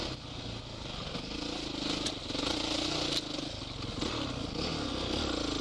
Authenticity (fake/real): real